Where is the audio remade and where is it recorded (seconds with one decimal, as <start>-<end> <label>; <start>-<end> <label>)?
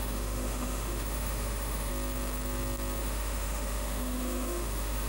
0.0-1.9 remade; 1.9-3.0 recorded; 3.0-5.1 remade